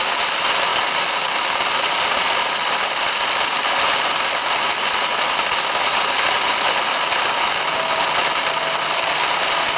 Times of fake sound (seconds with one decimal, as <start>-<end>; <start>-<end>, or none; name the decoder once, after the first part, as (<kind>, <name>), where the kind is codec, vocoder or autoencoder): none